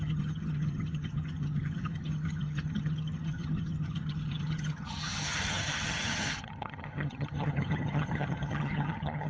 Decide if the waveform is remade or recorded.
remade